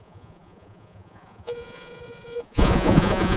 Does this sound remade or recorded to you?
remade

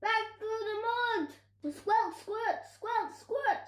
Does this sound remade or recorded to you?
recorded